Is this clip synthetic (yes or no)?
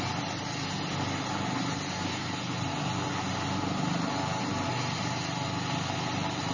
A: no